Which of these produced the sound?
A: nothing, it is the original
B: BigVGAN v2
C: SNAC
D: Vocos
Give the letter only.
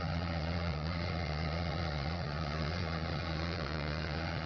D